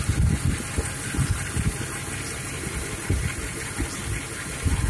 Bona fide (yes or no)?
yes